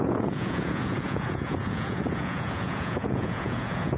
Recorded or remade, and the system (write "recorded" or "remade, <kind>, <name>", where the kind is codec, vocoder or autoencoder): remade, vocoder, Vocos